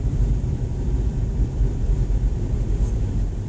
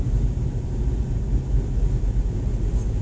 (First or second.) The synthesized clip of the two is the first